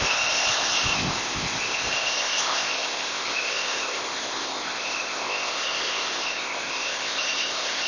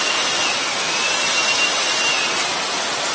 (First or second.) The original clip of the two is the second